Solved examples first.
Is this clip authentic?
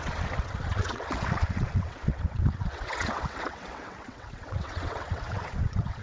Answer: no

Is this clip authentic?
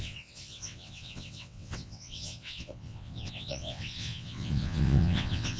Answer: no